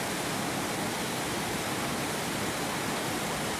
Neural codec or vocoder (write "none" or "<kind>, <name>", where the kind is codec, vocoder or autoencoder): none